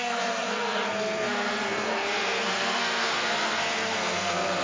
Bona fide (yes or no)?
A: no